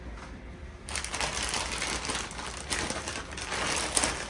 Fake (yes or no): no